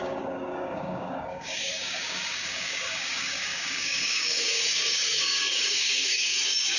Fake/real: fake